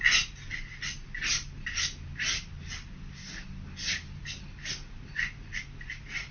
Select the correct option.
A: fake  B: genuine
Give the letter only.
B